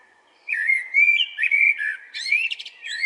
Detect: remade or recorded remade